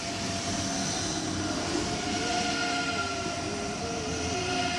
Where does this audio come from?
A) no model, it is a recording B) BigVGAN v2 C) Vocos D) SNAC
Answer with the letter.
A